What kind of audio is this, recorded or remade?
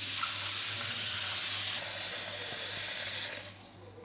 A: recorded